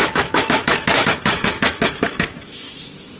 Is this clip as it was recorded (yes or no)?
no